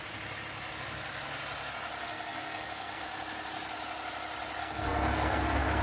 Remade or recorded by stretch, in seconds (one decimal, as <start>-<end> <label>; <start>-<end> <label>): 0.0-2.0 recorded; 2.0-3.1 remade; 3.1-4.6 recorded; 4.6-5.8 remade